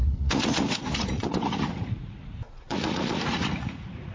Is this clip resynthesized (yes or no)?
yes